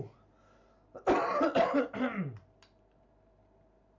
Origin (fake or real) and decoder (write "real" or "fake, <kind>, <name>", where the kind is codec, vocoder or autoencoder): real